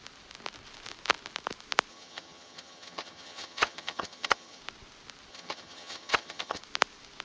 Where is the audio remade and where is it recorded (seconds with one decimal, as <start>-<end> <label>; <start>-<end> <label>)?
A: 0.0-1.9 recorded; 1.9-4.6 remade; 4.6-5.3 recorded; 5.3-6.6 remade; 6.6-7.2 recorded